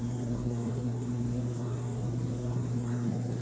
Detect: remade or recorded remade